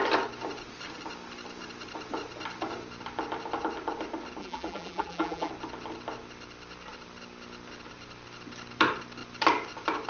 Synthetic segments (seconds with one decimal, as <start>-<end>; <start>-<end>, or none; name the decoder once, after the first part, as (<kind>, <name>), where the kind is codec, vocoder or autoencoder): 4.4-5.5 (vocoder, BigVGAN v2)